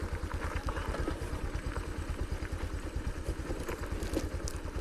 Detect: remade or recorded recorded